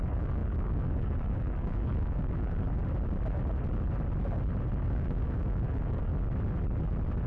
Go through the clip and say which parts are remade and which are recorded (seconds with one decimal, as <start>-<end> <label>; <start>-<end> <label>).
0.0-2.8 remade; 2.8-4.8 recorded; 4.8-6.1 remade; 6.1-7.3 recorded